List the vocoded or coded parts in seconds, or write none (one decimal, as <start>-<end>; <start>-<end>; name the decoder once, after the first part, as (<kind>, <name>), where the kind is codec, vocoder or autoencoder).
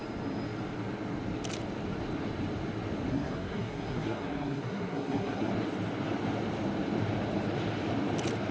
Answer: 3.1-5.5 (codec, SNAC)